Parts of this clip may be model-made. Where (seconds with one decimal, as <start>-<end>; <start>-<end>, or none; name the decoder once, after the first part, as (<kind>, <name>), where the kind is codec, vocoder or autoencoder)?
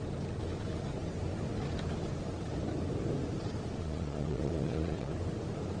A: 3.8-5.1 (vocoder, Vocos)